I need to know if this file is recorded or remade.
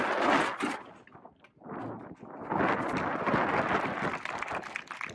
recorded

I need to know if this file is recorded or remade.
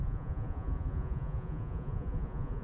remade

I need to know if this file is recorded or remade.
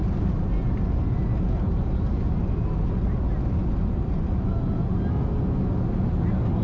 recorded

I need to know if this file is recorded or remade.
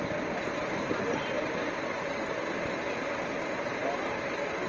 recorded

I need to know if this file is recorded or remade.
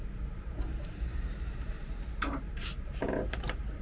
remade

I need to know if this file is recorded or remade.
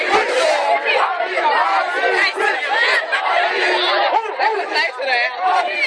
recorded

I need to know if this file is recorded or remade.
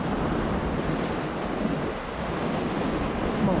recorded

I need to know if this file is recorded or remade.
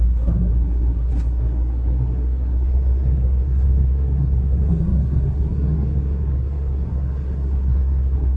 remade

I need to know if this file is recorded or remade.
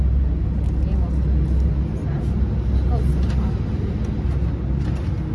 recorded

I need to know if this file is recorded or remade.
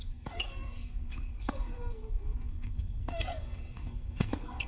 remade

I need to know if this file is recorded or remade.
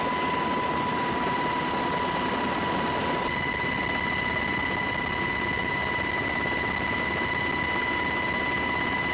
recorded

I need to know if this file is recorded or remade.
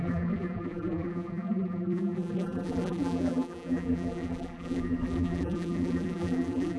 remade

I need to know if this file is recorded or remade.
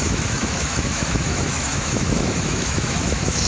remade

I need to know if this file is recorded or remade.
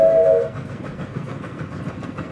remade